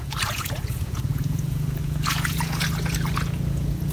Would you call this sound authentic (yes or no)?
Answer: no